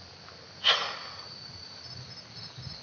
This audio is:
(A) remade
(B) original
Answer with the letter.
B